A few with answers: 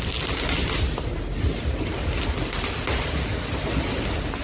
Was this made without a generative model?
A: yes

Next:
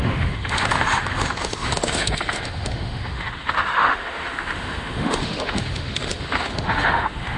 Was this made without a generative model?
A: no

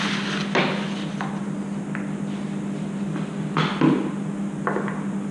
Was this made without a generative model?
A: yes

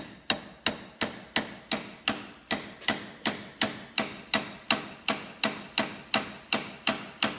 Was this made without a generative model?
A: yes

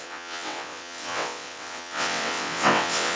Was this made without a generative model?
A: no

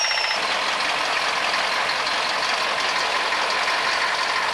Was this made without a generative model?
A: yes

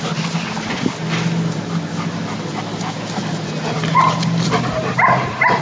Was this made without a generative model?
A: yes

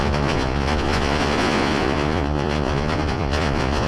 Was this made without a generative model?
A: no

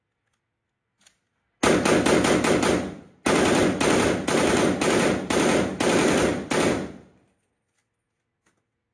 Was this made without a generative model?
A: yes